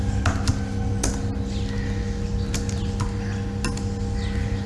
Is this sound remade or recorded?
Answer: recorded